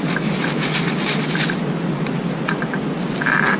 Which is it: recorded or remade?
recorded